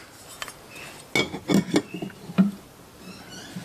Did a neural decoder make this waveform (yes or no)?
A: no